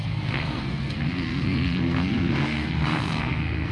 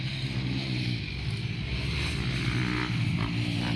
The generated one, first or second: first